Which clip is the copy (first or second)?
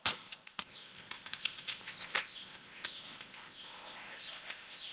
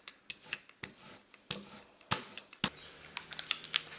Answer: first